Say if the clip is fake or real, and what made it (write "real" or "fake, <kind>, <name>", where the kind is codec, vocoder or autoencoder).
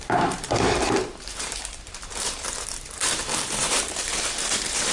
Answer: fake, vocoder, BigVGAN v2